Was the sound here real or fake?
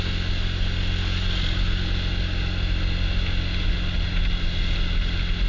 real